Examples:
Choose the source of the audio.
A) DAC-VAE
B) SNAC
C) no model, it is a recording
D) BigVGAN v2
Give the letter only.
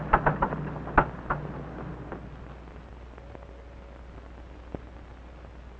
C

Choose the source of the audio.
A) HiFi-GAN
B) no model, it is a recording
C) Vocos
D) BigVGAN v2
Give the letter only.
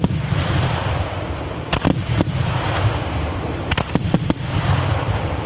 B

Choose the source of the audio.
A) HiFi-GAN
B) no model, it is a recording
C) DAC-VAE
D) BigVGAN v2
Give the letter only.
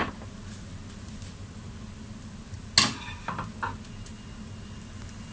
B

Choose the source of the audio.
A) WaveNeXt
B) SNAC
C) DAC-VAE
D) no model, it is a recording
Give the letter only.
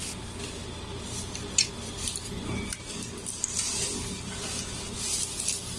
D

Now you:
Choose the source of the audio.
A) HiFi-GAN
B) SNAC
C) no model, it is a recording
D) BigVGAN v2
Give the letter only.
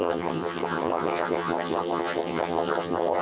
A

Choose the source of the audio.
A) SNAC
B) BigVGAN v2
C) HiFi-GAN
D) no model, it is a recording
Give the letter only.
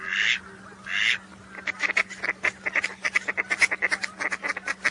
D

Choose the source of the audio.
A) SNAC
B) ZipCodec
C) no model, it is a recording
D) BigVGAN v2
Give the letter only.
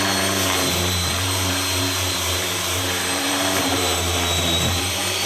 D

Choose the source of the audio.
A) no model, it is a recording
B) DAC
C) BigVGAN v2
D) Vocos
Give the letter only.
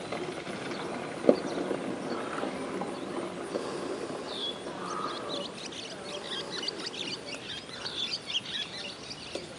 A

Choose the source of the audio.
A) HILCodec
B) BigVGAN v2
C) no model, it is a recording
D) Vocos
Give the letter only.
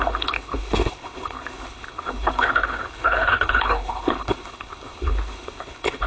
A